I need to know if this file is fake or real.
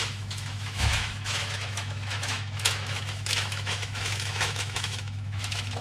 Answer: fake